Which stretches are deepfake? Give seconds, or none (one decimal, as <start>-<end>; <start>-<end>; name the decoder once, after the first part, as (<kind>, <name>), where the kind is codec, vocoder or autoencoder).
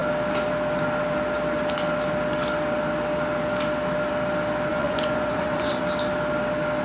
4.7-5.8 (vocoder, Vocos)